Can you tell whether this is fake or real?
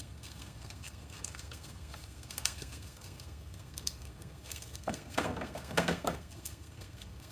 fake